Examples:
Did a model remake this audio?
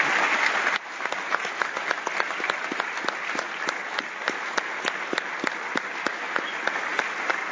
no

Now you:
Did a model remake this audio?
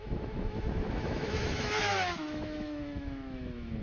yes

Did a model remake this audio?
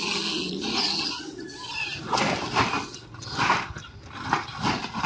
no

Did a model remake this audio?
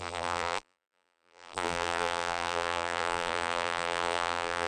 yes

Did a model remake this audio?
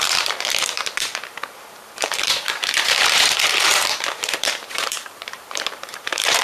yes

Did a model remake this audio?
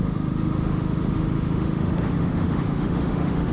yes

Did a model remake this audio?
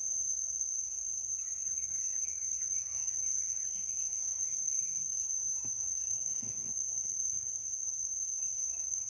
yes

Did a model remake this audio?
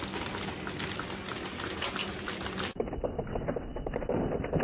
no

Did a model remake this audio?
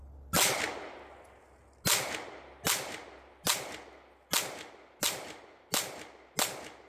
no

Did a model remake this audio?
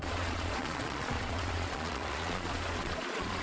yes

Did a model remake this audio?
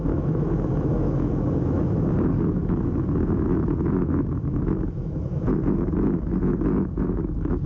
yes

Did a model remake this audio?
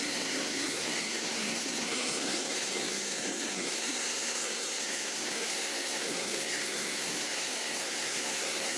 yes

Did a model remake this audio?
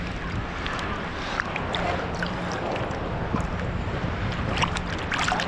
no